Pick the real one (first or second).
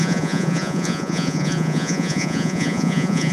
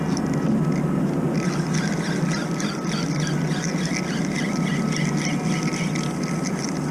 second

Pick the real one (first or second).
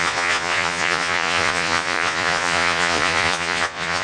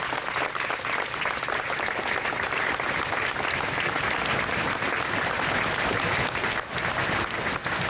second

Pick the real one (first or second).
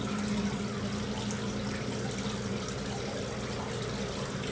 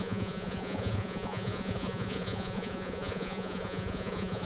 first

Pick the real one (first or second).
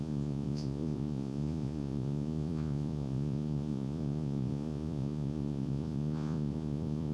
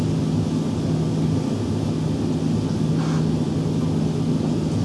second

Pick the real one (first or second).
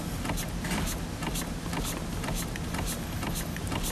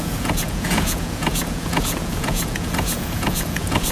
first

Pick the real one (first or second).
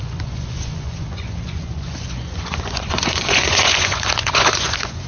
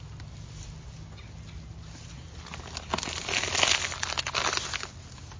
second